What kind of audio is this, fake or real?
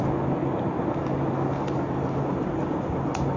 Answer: real